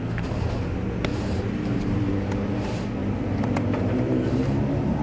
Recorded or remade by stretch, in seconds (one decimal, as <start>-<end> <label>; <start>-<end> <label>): 0.0-1.1 recorded; 1.1-2.1 remade; 2.1-3.0 recorded; 3.0-5.0 remade